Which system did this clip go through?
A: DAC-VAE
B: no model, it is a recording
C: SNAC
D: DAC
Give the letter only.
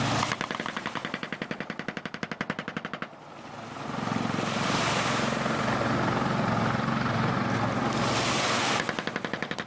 B